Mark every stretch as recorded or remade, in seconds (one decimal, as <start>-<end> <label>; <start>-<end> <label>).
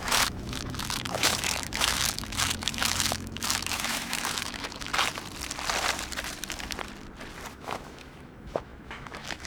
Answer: 0.0-4.9 remade; 4.9-7.5 recorded; 7.5-9.5 remade